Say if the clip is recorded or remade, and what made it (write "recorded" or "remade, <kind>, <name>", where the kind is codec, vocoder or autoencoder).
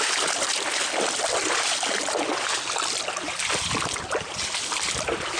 recorded